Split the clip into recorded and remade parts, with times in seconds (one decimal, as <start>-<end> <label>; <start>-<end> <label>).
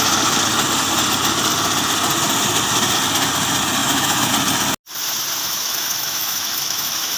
0.0-3.8 recorded; 3.8-4.3 remade; 4.3-5.4 recorded; 5.4-7.2 remade